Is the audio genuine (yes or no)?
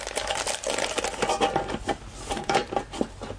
yes